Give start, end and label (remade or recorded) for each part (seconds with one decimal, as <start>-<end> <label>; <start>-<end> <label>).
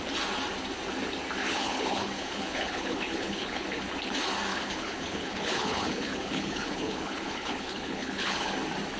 0.0-1.4 recorded; 1.4-3.8 remade; 3.8-4.5 recorded; 4.5-8.5 remade; 8.5-9.0 recorded